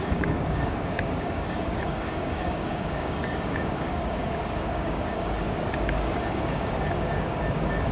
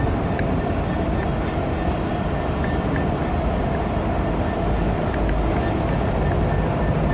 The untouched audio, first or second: second